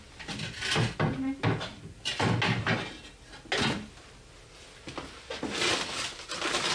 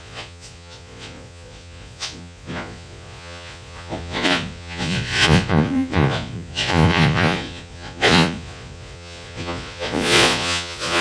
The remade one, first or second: second